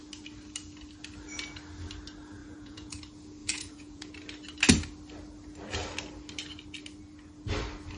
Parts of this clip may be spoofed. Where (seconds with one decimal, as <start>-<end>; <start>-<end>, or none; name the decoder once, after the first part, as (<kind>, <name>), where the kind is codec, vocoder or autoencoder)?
2.4-3.0 (vocoder, Vocos); 3.4-4.1